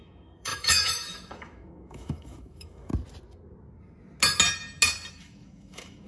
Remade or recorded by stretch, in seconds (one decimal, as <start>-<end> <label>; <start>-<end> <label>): 0.0-2.9 remade; 2.9-5.1 recorded; 5.1-6.1 remade